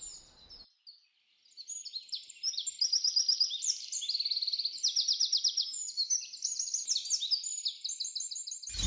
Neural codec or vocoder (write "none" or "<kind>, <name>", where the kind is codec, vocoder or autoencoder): none